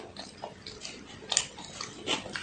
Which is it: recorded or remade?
recorded